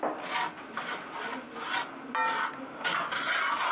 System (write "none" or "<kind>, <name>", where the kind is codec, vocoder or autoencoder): none